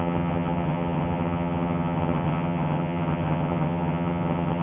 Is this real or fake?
fake